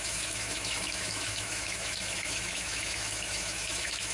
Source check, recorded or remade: remade